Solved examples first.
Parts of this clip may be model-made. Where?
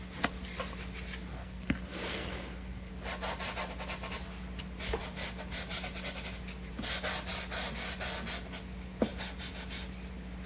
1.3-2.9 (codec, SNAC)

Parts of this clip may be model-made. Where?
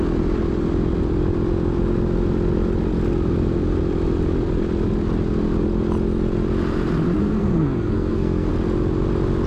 7.2-8.5 (codec, SNAC)